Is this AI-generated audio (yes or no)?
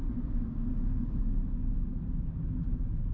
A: no